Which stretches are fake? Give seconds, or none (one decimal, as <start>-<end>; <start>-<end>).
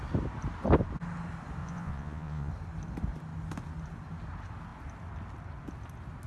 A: 1.6-2.5